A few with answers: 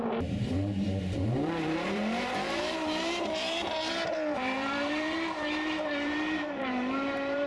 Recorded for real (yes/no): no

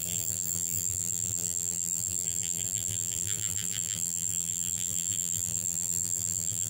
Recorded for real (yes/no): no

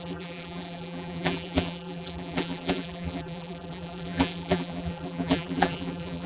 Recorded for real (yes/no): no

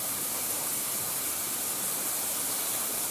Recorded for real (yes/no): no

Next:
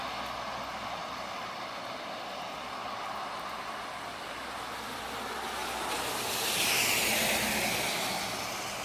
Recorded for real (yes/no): yes